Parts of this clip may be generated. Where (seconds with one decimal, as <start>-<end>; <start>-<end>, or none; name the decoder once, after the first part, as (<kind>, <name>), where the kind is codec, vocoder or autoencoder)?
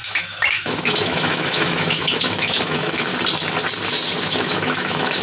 0.0-3.1 (autoencoder, DAC-VAE); 4.2-5.2